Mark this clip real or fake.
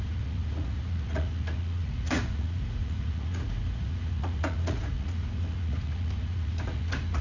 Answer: fake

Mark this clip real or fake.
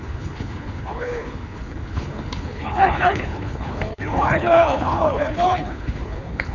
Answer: fake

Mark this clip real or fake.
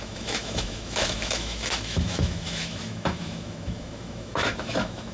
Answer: fake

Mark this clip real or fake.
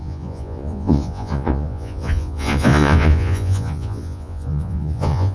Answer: fake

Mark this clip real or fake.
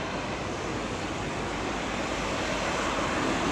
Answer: real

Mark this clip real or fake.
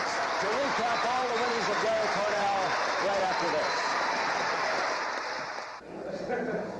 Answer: fake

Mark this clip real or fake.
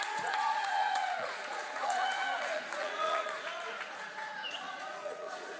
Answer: fake